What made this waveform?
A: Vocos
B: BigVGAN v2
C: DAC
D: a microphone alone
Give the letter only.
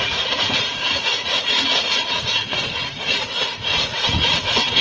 A